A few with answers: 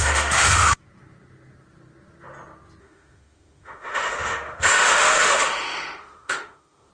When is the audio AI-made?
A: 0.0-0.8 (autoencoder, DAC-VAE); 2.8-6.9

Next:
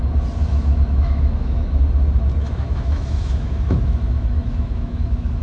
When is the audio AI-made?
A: 0.5-1.8 (autoencoder, DAC-VAE); 2.4-5.4

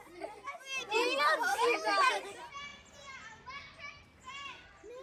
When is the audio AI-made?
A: 1.5-2.1 (autoencoder, DAC-VAE)

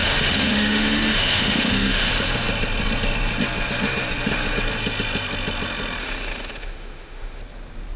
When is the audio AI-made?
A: 0.0-2.1 (autoencoder, DAC-VAE); 6.0-7.4

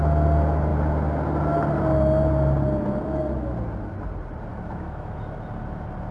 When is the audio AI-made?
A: 4.5-5.2 (autoencoder, DAC-VAE)

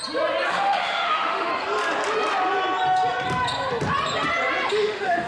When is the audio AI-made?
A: 0.5-1.5 (autoencoder, DAC-VAE); 4.7-5.3

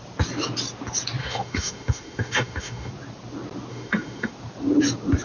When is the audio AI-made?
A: 1.2-2.9 (autoencoder, DAC-VAE); 3.7-4.3